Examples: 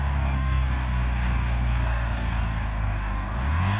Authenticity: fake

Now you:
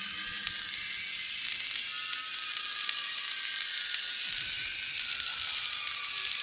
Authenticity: real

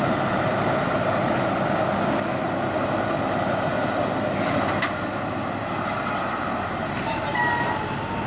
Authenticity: real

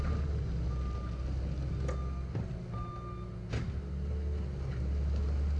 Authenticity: real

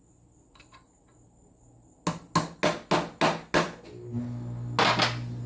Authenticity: real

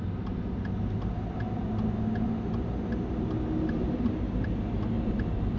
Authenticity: real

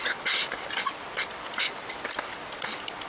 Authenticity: real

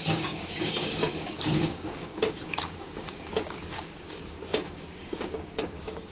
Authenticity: fake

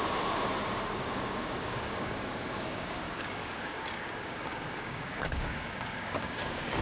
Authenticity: fake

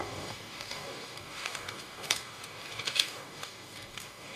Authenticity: fake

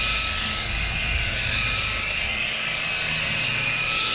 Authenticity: fake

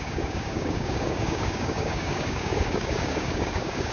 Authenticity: fake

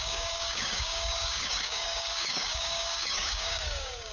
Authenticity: fake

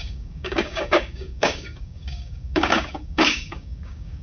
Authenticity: fake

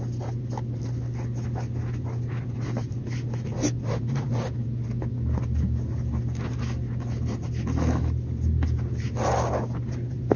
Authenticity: real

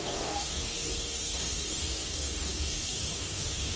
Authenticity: fake